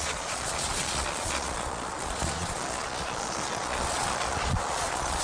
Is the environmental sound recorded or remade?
remade